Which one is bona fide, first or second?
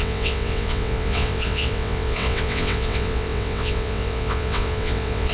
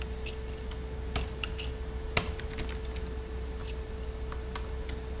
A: second